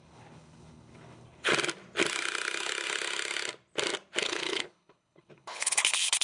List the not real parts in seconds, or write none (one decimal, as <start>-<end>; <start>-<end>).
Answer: 0.0-1.5; 4.2-6.2